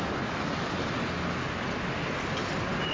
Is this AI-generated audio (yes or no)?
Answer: no